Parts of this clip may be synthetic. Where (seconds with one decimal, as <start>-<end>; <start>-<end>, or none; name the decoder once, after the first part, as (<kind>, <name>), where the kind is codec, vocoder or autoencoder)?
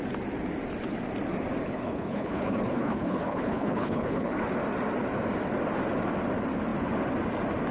1.6-4.4 (codec, HILCodec)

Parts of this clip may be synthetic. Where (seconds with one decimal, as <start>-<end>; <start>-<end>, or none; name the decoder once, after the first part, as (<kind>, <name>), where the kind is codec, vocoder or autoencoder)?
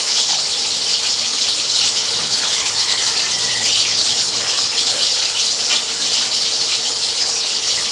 0.0-0.5 (codec, HILCodec); 1.1-3.0; 3.5-5.7; 6.3-7.9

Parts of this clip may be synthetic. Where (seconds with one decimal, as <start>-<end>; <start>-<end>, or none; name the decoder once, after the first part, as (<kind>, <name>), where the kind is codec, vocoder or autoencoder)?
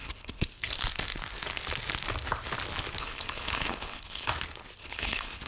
0.0-0.5 (codec, HILCodec); 3.0-4.3; 4.8-5.5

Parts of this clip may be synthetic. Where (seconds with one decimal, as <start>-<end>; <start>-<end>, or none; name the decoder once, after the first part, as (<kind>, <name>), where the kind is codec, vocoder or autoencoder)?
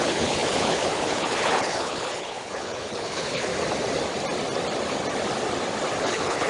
0.0-3.5 (codec, HILCodec); 6.0-6.5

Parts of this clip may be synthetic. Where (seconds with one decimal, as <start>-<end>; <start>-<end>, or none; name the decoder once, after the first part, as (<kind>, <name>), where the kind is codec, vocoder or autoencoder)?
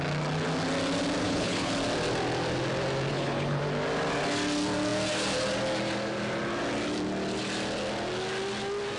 1.2-1.7 (codec, HILCodec); 3.1-3.6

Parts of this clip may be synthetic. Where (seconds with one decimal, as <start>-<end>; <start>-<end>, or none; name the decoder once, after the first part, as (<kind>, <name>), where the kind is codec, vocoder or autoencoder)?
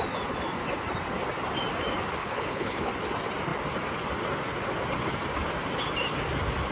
2.2-2.9 (codec, HILCodec)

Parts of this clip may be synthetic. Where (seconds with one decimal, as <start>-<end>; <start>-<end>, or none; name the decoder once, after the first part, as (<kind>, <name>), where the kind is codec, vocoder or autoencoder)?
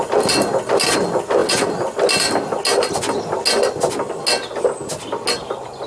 none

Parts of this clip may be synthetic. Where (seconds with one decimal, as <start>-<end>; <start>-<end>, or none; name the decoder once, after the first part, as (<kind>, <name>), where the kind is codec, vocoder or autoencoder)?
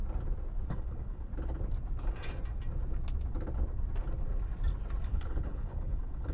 0.7-1.3 (codec, HILCodec); 5.1-6.3